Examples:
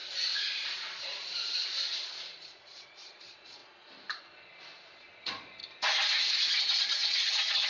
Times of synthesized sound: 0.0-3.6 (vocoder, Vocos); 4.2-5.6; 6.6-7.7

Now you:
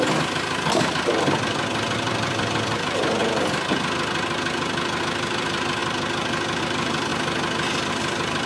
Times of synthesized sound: 0.0-3.2 (vocoder, BigVGAN v2); 5.0-5.8; 6.6-7.1; 7.9-8.5

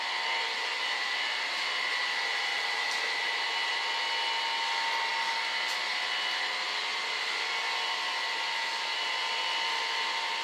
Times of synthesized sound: 2.5-3.8 (vocoder, BigVGAN v2); 6.9-7.5

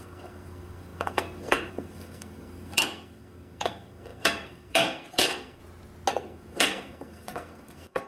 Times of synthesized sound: 0.0-5.6 (codec, SNAC); 6.1-8.1

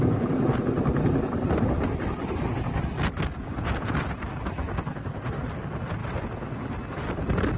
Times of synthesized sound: none

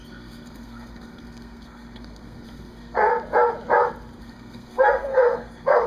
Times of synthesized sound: 0.0-3.1 (codec, SNAC); 4.2-5.9